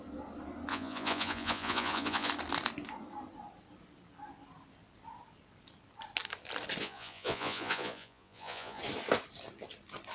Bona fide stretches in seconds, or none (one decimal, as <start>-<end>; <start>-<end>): 0.0-0.7; 2.3-6.8; 8.8-10.1